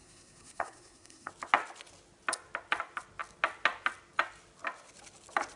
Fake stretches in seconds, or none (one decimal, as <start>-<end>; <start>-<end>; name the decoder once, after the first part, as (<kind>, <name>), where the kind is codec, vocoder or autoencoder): 0.0-1.3 (codec, SNAC)